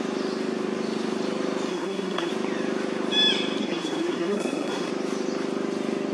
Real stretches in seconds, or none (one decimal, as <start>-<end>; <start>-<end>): 0.0-1.7; 2.3-3.6; 4.9-6.1

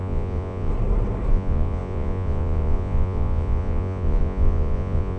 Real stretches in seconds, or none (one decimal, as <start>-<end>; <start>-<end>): 0.7-1.3

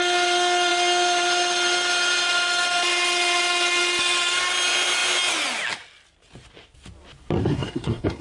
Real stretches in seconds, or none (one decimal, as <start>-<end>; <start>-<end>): 0.0-7.4

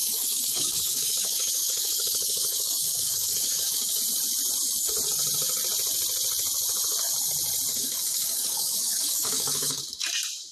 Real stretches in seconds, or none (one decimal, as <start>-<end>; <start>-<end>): 4.0-7.7; 9.8-10.5

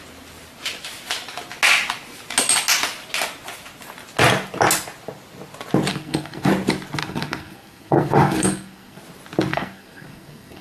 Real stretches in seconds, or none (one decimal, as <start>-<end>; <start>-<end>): 0.0-5.9; 6.5-7.0; 9.0-9.5